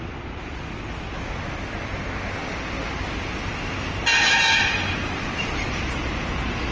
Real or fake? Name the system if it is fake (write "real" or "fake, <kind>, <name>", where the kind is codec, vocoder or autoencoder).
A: real